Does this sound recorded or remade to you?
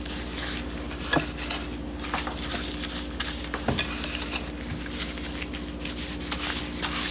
recorded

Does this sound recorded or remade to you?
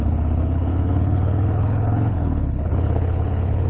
remade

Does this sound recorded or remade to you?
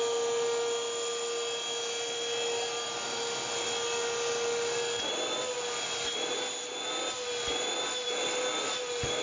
recorded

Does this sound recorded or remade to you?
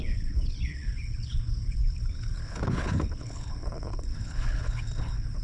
remade